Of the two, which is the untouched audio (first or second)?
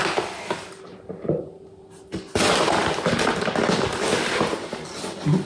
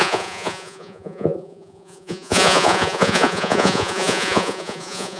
first